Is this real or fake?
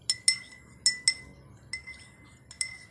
real